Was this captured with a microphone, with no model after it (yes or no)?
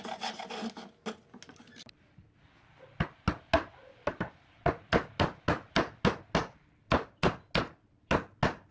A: yes